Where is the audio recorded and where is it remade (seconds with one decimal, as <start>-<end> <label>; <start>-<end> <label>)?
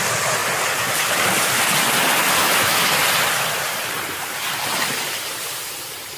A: 0.0-2.4 recorded; 2.4-3.0 remade; 3.0-6.2 recorded